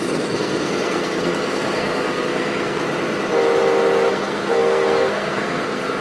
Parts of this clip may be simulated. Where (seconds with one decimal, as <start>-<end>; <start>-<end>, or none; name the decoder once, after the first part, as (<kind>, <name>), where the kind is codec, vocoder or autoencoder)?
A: 0.0-2.8 (codec, SNAC); 4.1-6.0